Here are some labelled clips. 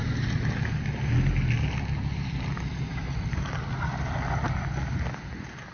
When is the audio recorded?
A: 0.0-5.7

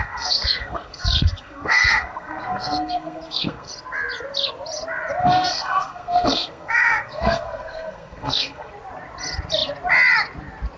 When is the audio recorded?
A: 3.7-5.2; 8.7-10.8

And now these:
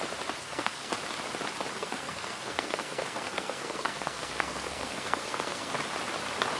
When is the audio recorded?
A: 0.0-0.4; 0.9-1.7; 5.7-6.6

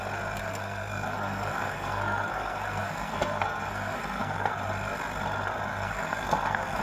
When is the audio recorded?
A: 0.0-0.4; 4.5-5.7

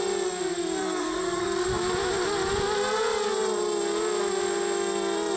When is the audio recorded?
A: 0.0-0.8; 1.7-5.4

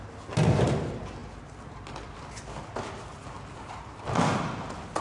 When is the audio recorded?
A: 0.0-5.0